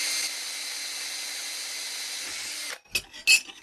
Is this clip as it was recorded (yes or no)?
yes